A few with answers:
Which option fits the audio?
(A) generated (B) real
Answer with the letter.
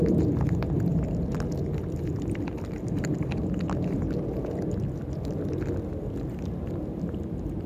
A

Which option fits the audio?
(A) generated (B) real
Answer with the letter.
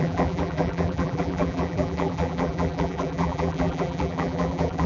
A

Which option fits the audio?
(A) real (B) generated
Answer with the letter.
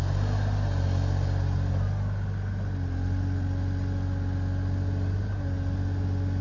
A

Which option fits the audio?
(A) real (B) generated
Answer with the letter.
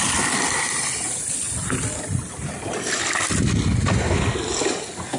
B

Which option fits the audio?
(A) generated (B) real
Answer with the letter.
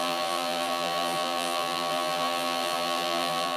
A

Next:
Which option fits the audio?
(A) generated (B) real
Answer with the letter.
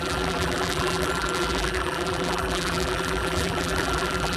A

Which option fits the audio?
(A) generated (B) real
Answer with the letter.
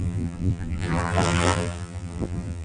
A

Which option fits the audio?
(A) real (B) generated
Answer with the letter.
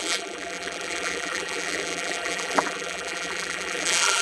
B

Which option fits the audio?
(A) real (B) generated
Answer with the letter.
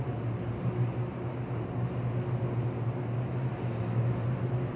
A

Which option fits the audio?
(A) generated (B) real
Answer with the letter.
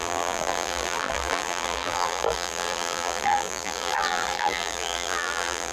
A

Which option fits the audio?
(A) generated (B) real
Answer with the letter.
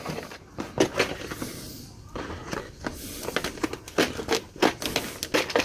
B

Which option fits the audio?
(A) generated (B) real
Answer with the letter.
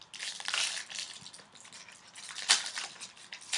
B